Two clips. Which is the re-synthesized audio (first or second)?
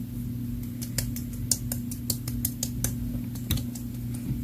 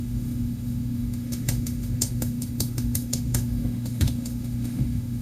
second